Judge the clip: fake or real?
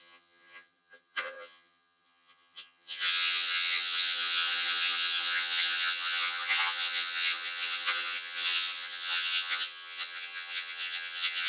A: fake